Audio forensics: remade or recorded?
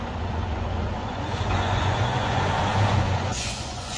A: remade